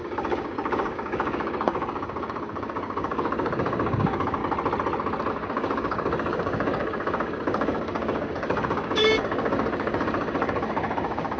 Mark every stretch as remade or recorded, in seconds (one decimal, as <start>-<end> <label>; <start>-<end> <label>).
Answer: 0.0-4.4 remade; 4.4-5.3 recorded; 5.3-11.4 remade

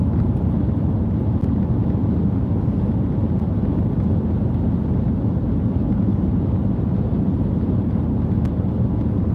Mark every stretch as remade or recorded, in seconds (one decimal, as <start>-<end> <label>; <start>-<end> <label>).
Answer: 0.0-6.1 recorded; 6.1-6.7 remade; 6.7-9.3 recorded

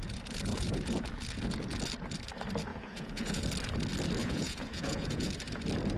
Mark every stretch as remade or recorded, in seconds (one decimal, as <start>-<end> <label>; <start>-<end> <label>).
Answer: 0.0-2.7 recorded; 2.7-3.4 remade; 3.4-4.2 recorded; 4.2-5.3 remade; 5.3-6.0 recorded

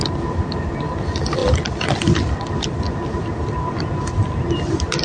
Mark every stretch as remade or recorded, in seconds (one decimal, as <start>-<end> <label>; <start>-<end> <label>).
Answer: 0.0-5.0 recorded

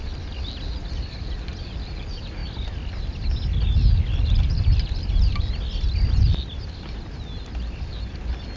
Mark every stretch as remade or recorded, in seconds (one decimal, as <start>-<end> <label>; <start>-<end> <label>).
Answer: 0.0-8.6 recorded

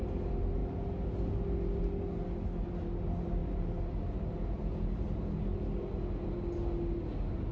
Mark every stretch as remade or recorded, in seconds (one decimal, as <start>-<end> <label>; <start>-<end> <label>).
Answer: 0.0-7.5 recorded

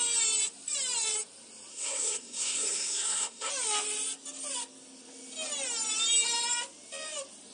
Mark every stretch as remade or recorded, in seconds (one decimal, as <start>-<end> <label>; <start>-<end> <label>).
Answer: 0.0-1.7 recorded; 1.7-3.5 remade; 3.5-7.5 recorded